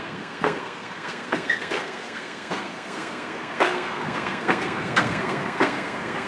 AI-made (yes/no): yes